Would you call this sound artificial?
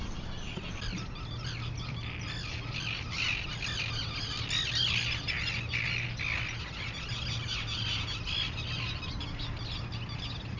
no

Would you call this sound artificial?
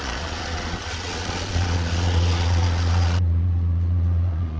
yes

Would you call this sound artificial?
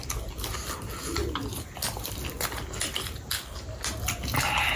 no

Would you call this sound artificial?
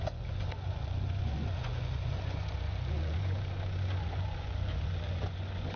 yes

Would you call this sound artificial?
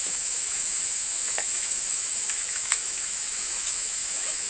yes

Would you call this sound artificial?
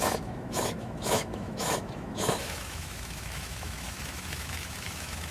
yes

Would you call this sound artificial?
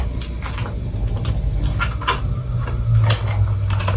no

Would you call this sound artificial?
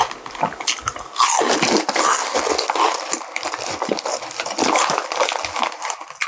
no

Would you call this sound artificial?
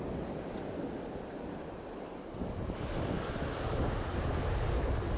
no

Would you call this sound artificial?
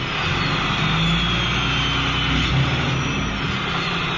no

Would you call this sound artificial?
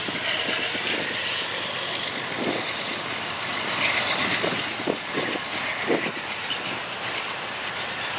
no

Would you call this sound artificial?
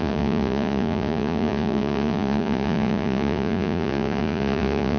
yes